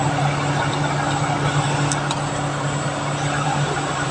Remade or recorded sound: recorded